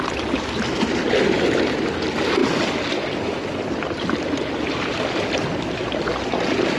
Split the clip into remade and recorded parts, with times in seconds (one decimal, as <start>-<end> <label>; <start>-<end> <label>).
0.0-6.8 recorded